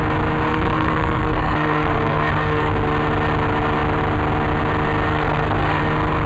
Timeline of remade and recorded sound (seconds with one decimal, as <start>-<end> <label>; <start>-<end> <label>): 0.0-0.5 recorded; 0.5-2.7 remade; 2.7-5.1 recorded; 5.1-5.8 remade; 5.8-6.3 recorded